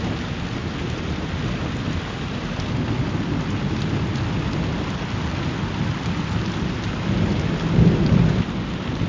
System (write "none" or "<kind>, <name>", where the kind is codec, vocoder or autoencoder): none